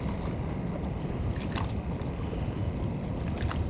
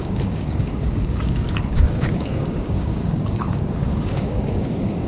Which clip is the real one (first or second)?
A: first